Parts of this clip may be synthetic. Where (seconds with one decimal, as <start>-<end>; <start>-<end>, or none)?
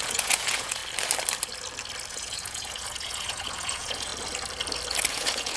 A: 0.0-0.8; 2.1-4.1; 5.1-5.6